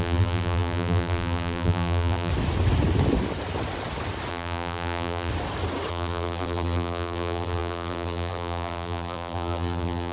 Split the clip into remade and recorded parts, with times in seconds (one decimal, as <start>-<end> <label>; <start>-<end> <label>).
0.0-2.3 remade; 2.3-4.3 recorded; 4.3-5.3 remade; 5.3-5.9 recorded; 5.9-10.1 remade